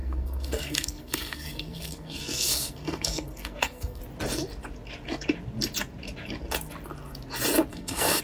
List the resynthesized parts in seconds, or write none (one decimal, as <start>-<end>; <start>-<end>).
0.0-4.0; 7.7-8.2